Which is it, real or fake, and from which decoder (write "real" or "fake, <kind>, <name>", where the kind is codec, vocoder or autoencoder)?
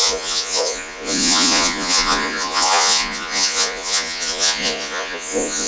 fake, vocoder, Vocos